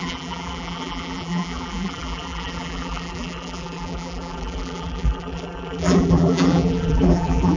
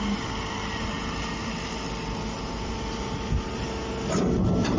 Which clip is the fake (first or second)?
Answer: first